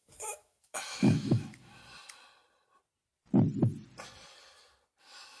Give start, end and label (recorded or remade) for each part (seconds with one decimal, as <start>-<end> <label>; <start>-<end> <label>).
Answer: 0.0-1.8 remade; 1.8-5.0 recorded; 5.0-5.4 remade